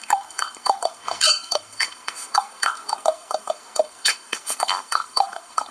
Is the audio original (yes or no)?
no